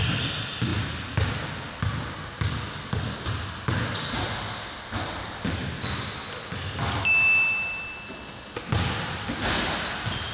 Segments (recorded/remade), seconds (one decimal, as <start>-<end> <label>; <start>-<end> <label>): 0.0-10.3 recorded